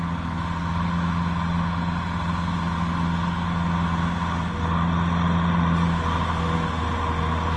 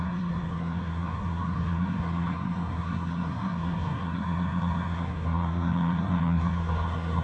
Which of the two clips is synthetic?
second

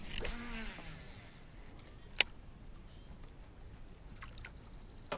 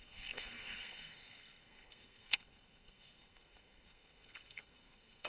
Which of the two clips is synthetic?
second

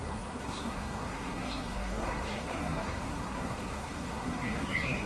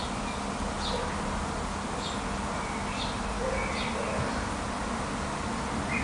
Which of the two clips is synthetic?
first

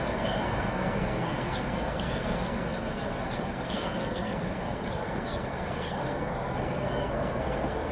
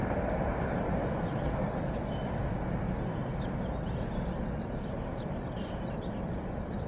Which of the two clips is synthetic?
first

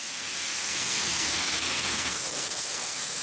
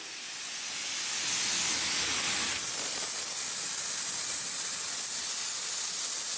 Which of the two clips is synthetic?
first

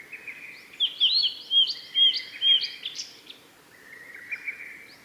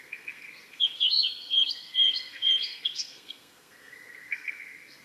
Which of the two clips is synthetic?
second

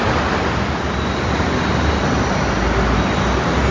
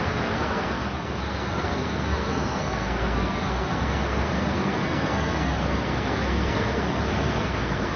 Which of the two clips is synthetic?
second